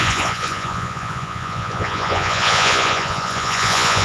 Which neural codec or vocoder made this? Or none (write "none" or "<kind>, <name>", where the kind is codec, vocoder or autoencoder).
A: vocoder, Vocos